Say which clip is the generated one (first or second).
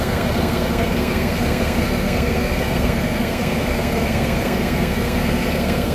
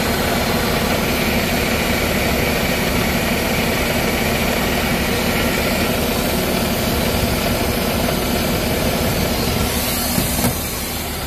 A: first